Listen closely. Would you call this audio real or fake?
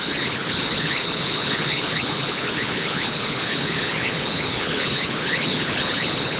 fake